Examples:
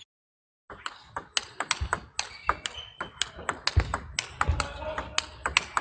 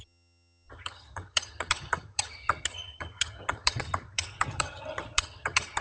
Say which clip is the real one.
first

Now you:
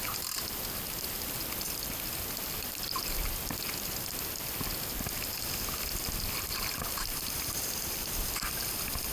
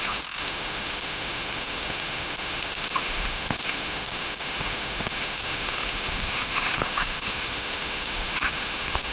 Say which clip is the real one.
first